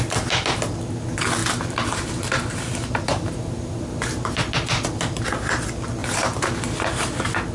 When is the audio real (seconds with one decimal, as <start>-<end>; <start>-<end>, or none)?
0.0-1.4; 4.3-6.0; 6.6-7.5